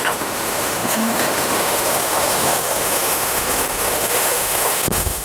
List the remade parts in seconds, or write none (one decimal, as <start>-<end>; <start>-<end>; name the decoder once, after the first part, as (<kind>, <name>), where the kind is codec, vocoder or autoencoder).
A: 0.0-5.2 (autoencoder, DAC-VAE)